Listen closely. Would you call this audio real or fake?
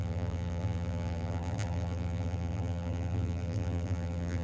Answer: fake